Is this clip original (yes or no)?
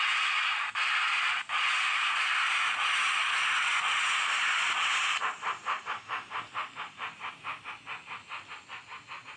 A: yes